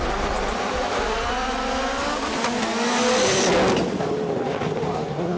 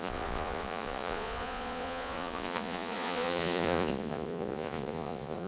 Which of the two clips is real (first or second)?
first